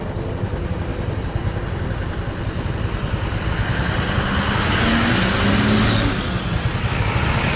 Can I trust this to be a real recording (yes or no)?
yes